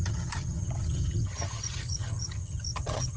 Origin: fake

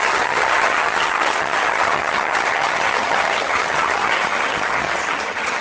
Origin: fake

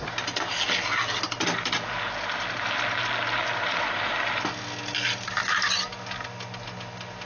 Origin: real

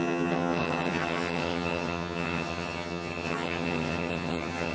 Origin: fake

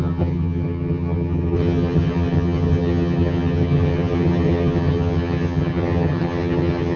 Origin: fake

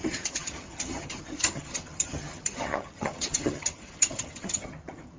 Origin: fake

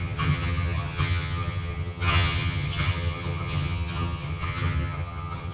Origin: fake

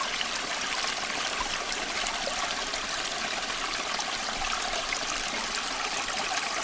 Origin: real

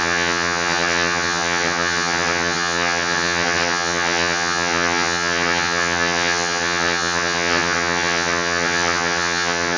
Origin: fake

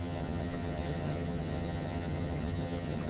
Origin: fake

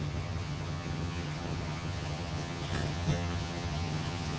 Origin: fake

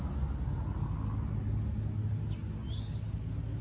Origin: real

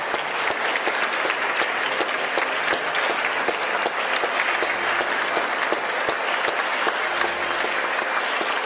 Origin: real